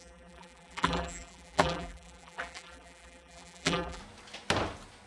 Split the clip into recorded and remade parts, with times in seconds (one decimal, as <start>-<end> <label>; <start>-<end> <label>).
0.0-4.0 remade; 4.0-5.1 recorded